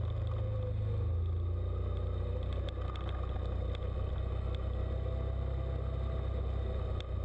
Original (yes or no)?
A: yes